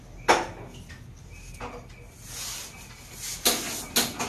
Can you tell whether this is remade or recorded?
recorded